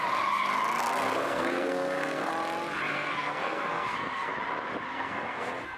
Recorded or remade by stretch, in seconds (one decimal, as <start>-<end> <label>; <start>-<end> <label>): 0.0-0.8 recorded; 0.8-2.3 remade; 2.3-2.9 recorded; 2.9-4.3 remade; 4.3-4.9 recorded; 4.9-5.8 remade